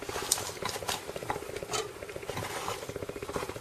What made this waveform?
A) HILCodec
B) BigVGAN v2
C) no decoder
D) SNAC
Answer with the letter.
B